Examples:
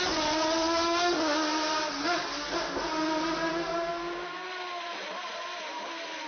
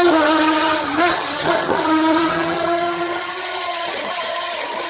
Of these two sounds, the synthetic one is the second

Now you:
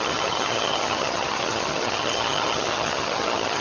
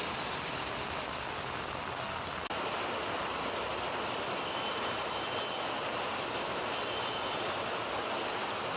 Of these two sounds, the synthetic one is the first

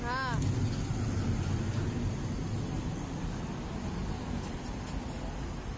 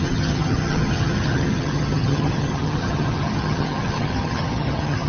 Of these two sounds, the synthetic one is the second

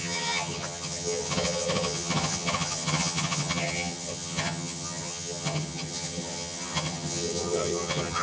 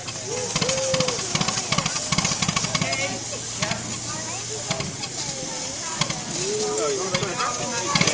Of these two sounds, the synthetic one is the first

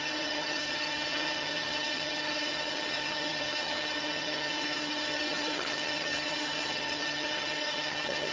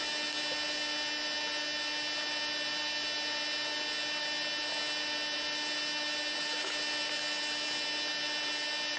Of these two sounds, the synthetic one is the first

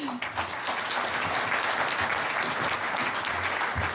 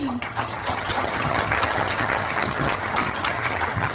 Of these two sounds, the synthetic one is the second